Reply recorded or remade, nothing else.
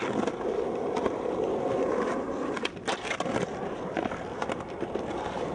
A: remade